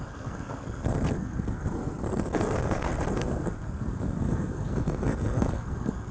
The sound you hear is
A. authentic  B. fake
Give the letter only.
B